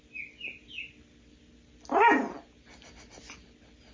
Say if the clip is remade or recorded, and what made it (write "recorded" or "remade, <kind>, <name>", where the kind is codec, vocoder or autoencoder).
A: recorded